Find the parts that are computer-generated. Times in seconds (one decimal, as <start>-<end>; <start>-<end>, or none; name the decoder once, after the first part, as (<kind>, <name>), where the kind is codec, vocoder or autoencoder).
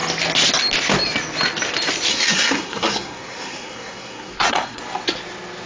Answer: 2.1-4.8 (codec, SNAC)